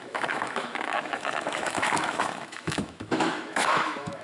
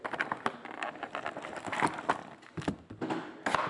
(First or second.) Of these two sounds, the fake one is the first